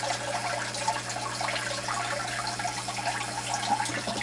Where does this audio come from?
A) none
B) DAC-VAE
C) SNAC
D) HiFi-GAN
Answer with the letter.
A